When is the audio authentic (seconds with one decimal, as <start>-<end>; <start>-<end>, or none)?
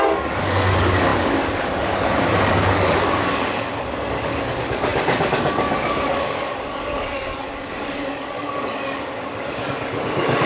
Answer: none